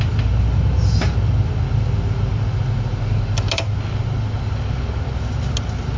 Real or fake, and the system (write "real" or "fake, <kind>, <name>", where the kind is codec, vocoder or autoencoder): real